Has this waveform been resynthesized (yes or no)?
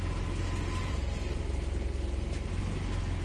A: no